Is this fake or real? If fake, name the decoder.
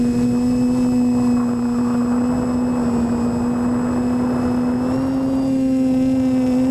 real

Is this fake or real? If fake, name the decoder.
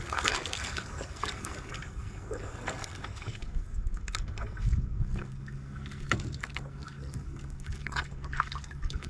fake, codec, SNAC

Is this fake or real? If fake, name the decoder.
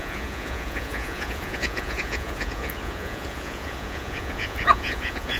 fake, vocoder, Vocos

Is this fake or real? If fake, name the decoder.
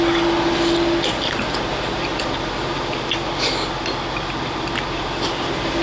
real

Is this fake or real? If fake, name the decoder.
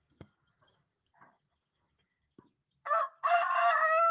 fake, codec, DAC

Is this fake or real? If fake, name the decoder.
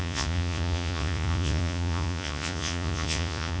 fake, vocoder, Vocos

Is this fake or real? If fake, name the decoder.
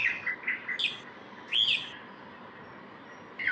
real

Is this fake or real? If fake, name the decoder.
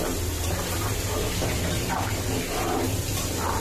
real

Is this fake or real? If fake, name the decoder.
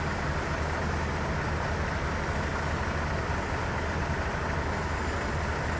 real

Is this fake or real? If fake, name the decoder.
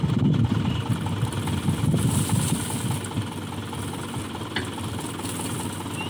real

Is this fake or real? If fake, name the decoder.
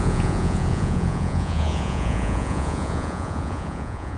fake, vocoder, Vocos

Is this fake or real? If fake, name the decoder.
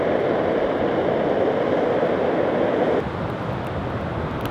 real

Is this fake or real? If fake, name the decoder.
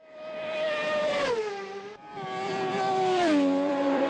fake, vocoder, BigVGAN v2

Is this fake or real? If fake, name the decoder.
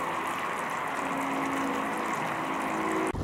real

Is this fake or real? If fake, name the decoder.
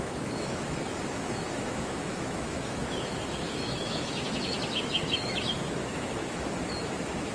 fake, autoencoder, DAC-VAE